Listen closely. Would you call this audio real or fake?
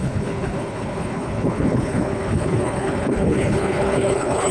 fake